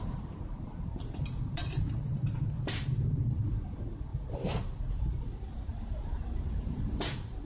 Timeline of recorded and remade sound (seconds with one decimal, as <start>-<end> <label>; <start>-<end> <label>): 0.0-1.6 remade; 1.6-3.6 recorded; 3.6-4.1 remade; 4.1-4.9 recorded; 4.9-5.7 remade; 5.7-7.4 recorded